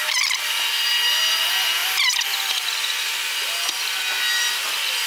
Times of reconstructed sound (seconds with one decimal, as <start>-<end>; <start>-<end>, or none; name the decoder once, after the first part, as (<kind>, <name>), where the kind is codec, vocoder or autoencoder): 1.8-2.4 (vocoder, BigVGAN v2)